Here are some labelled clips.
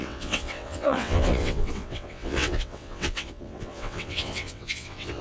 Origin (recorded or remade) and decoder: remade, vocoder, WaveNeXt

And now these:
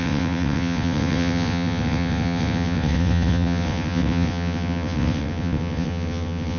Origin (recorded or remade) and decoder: remade, vocoder, WaveNeXt